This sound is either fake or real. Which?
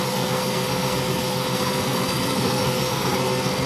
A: fake